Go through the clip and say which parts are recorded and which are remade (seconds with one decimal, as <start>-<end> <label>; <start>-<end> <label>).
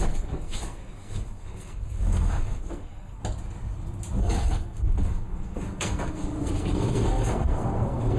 0.0-3.2 remade; 3.2-4.2 recorded; 4.2-8.2 remade